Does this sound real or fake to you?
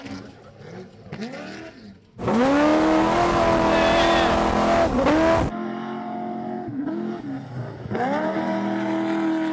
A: real